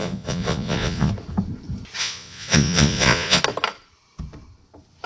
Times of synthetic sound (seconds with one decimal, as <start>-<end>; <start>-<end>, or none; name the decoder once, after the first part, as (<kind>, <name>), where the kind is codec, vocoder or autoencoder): 0.0-1.1 (vocoder, Vocos); 2.0-3.4